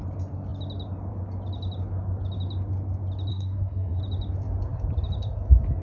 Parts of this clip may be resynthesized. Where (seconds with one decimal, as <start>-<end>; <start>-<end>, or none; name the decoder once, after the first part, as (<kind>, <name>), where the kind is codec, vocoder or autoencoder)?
3.3-4.0 (codec, SNAC)